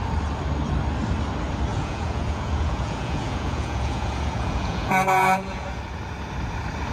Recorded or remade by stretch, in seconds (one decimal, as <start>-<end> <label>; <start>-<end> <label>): 0.0-1.7 recorded; 1.7-5.8 remade; 5.8-6.9 recorded